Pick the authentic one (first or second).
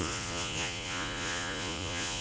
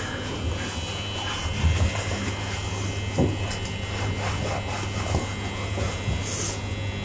second